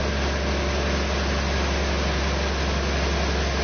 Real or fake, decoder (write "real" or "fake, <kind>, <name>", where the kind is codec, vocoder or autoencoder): real